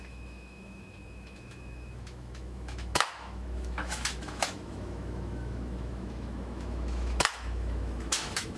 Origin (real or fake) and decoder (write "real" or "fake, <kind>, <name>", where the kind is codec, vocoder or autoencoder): fake, autoencoder, DAC-VAE